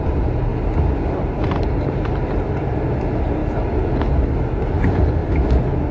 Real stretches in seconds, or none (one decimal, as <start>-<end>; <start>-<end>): 0.5-1.2; 3.4-4.7; 5.2-5.9